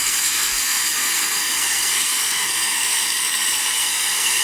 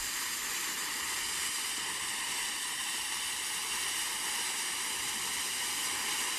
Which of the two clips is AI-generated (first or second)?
first